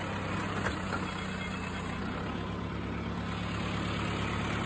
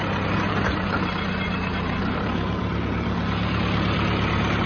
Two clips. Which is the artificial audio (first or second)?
second